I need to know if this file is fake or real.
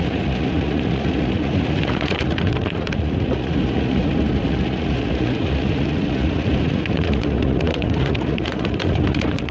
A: fake